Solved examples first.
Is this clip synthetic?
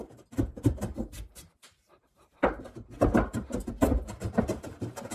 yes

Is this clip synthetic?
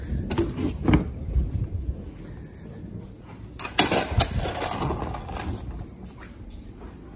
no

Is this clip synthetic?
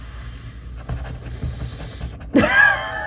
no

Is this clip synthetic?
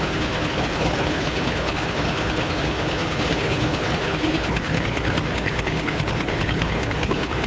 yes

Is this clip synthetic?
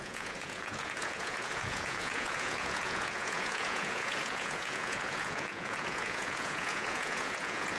yes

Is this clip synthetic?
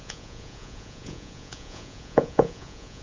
yes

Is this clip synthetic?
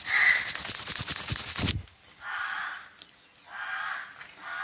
no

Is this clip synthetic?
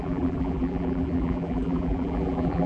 yes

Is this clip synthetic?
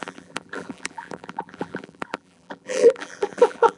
yes